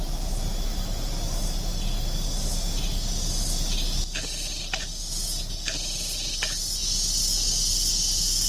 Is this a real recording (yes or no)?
yes